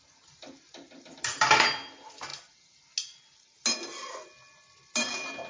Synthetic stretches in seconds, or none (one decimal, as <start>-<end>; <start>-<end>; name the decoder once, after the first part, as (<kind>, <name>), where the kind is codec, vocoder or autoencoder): none

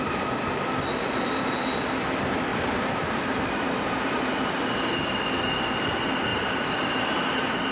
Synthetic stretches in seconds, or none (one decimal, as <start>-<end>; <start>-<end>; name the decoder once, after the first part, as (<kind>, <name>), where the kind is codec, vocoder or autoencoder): 2.5-4.7 (vocoder, BigVGAN v2); 6.3-7.7

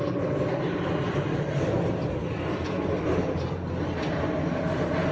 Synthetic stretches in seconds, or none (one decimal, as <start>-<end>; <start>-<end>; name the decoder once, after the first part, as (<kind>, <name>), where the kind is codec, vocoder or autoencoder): 0.0-2.0 (vocoder, BigVGAN v2); 3.0-5.1

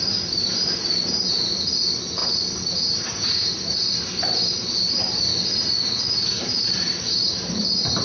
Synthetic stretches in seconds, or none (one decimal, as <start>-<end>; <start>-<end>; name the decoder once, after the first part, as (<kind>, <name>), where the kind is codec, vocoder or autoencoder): 0.0-2.2 (vocoder, BigVGAN v2); 2.7-5.3; 6.3-8.0

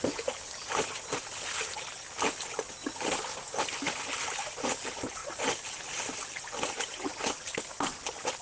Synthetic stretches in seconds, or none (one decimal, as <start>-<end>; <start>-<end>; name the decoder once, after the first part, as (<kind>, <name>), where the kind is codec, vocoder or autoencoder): 5.2-7.6 (vocoder, BigVGAN v2)

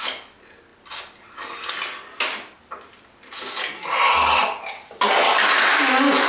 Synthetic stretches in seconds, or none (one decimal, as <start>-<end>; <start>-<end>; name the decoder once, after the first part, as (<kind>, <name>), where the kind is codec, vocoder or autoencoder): 4.4-5.7 (vocoder, BigVGAN v2)

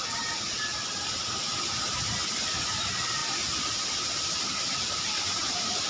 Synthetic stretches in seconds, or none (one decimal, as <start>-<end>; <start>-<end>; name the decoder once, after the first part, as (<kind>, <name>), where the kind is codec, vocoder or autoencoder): none

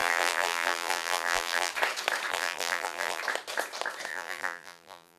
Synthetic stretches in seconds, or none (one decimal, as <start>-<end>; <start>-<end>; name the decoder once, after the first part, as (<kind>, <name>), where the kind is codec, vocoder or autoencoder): 0.0-1.7 (vocoder, BigVGAN v2); 2.3-3.2; 4.1-5.2